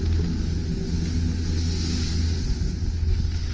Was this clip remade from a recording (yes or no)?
no